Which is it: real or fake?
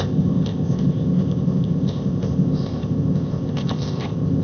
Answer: fake